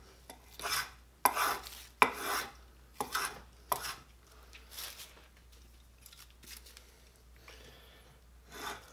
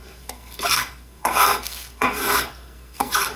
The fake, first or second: second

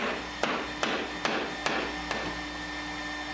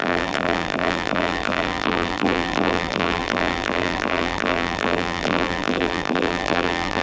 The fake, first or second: second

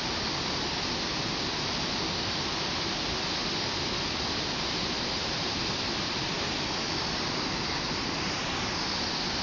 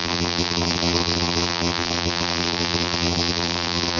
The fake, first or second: second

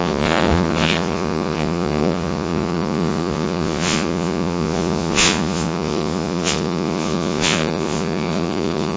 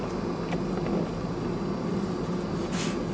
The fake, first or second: first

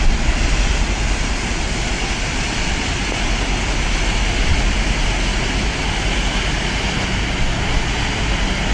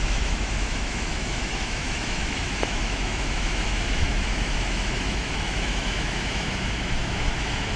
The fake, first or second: second